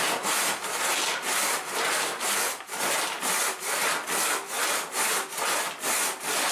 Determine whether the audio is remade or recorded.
recorded